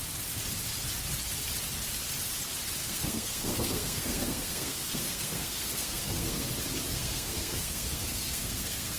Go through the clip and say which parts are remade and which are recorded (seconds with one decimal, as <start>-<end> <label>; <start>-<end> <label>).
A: 0.0-2.8 recorded; 2.8-6.5 remade; 6.5-6.9 recorded; 6.9-9.0 remade